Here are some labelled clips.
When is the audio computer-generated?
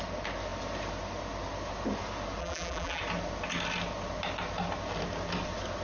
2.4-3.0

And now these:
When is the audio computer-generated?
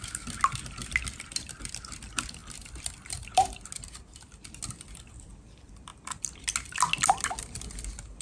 2.4-3.3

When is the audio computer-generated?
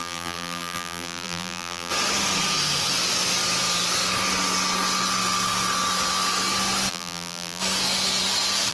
0.0-1.9; 6.9-7.6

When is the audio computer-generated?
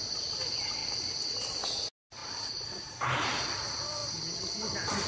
2.2-2.9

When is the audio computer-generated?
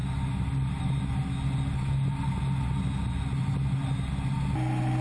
0.0-1.0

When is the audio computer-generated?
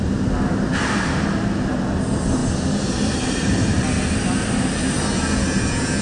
2.4-3.8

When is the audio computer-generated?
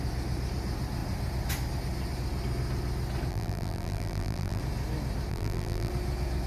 3.3-4.6; 5.3-5.9